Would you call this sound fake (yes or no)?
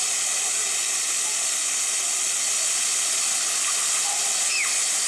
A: no